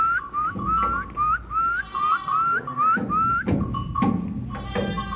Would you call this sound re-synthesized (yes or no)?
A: no